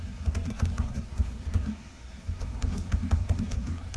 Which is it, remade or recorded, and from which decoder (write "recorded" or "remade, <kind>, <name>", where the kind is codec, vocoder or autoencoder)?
remade, codec, SNAC